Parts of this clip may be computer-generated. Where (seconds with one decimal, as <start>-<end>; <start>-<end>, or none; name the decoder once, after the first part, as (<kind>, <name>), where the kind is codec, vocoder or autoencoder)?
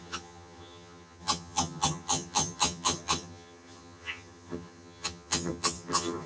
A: 0.0-6.3 (vocoder, HiFi-GAN)